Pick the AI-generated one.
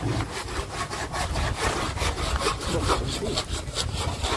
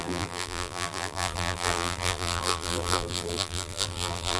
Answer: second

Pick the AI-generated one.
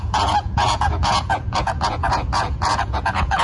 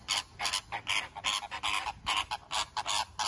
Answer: first